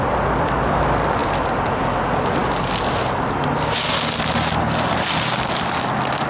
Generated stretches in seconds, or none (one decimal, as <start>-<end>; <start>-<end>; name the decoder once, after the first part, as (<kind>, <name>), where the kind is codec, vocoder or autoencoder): none